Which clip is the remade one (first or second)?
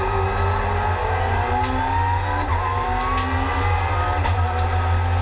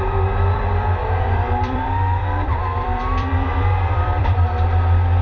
second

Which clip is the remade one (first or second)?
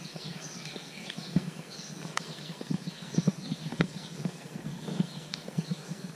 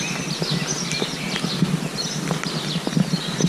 first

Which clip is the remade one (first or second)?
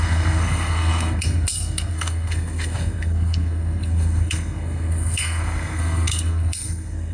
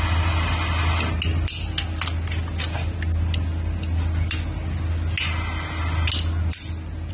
first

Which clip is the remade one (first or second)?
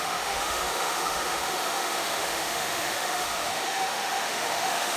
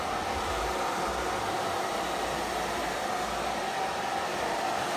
first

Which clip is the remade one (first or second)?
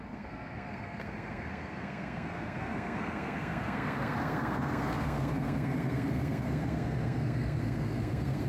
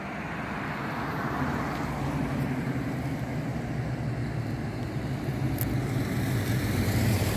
first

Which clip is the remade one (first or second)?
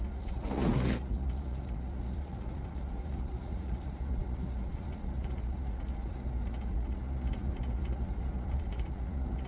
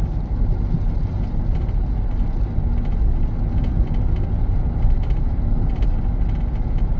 first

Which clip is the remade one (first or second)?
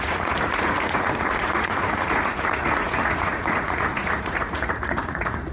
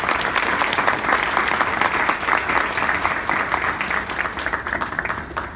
first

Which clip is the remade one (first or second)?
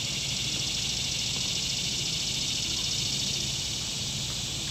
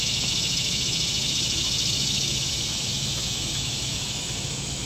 second